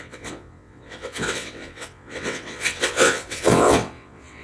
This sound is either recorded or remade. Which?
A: remade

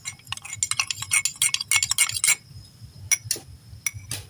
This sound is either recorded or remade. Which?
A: recorded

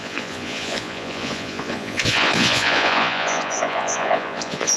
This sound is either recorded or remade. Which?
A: remade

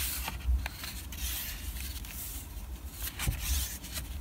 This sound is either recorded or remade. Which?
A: remade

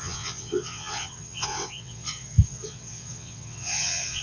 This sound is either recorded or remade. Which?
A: remade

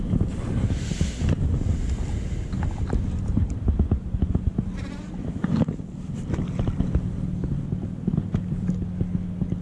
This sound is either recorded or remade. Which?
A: recorded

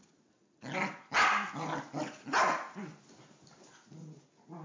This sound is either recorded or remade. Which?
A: recorded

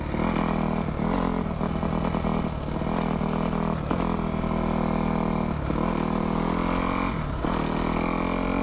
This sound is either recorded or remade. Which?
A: recorded